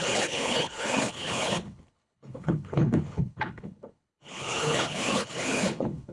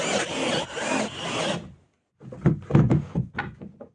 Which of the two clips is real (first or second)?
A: second